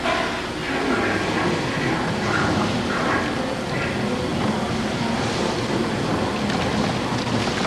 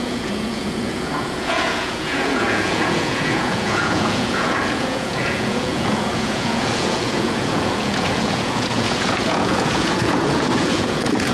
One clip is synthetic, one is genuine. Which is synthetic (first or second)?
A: second